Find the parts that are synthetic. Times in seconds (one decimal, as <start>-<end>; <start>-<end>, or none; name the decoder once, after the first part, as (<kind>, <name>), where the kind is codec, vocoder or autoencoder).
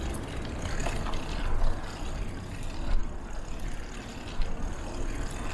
none